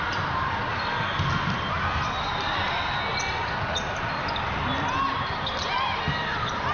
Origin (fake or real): real